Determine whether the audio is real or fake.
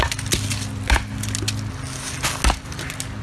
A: real